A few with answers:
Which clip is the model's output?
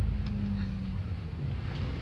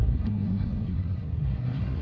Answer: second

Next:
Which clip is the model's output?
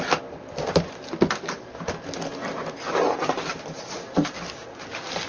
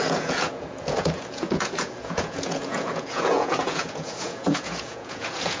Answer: second